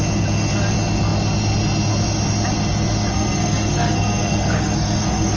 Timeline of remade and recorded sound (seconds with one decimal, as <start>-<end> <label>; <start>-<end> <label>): 0.0-3.1 recorded; 3.1-5.4 remade